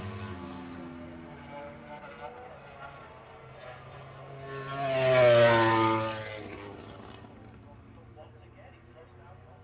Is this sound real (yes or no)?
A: yes